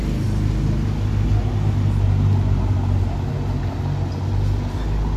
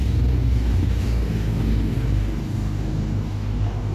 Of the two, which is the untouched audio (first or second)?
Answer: first